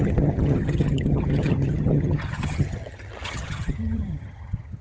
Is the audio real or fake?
fake